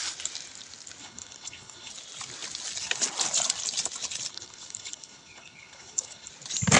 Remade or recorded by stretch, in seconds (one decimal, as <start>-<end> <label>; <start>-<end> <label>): 0.0-1.0 recorded; 1.0-1.9 remade; 1.9-4.3 recorded; 4.3-6.3 remade; 6.3-6.8 recorded